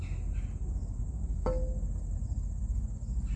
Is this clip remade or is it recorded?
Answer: recorded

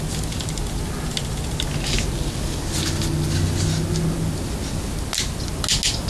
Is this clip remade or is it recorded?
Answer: recorded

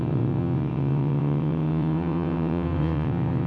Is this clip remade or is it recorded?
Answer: remade